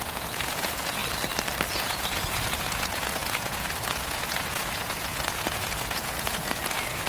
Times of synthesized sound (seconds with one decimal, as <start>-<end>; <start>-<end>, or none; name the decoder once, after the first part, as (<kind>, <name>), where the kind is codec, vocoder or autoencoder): 0.0-1.0 (vocoder, Vocos); 1.7-7.1